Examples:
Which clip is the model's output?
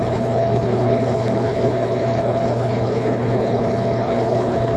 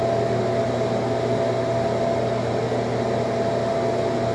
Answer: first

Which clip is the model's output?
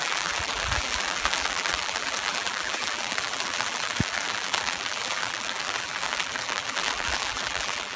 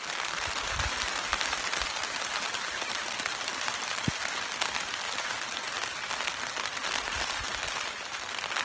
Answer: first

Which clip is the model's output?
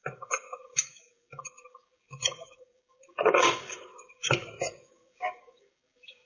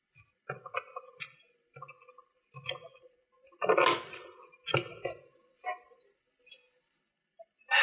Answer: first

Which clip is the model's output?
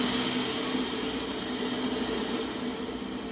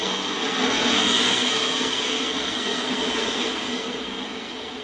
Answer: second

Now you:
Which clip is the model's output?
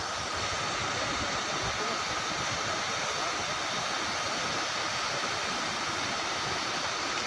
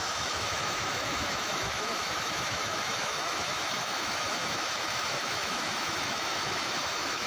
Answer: second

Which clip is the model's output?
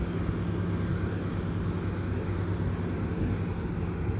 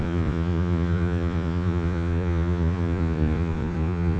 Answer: second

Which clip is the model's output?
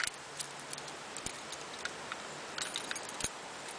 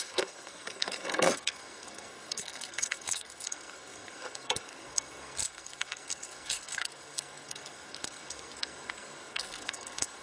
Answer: second